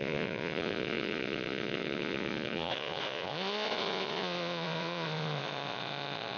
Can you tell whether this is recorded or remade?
remade